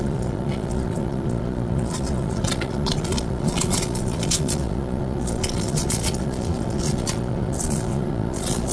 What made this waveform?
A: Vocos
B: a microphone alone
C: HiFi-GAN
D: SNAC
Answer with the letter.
A